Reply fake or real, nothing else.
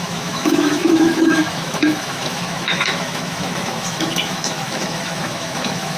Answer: fake